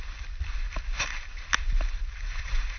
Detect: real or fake real